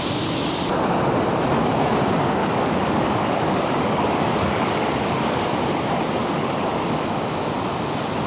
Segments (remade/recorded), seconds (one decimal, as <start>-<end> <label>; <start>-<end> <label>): 0.0-2.4 recorded; 2.4-5.6 remade; 5.6-6.2 recorded; 6.2-7.5 remade; 7.5-8.3 recorded